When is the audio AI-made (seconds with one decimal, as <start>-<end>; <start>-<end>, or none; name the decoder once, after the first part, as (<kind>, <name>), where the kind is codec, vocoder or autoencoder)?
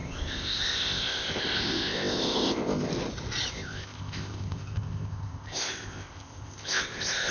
0.0-2.9 (codec, ZipCodec); 3.5-7.3